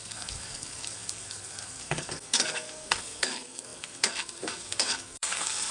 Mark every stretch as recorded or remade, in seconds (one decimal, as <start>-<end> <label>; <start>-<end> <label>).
0.0-5.7 remade